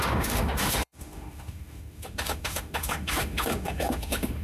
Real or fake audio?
fake